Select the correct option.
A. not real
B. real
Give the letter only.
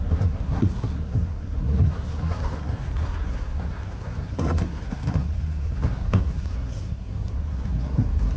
A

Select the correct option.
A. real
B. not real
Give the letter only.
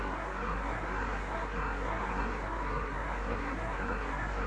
B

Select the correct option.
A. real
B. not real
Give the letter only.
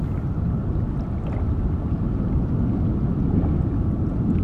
A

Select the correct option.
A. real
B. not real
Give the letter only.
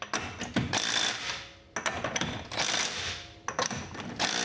A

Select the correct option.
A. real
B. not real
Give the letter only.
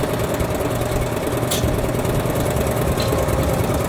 A